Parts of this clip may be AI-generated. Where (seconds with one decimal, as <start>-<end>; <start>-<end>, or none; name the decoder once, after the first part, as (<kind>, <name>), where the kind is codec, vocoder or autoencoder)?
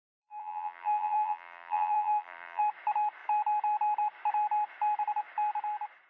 0.0-2.6 (vocoder, BigVGAN v2)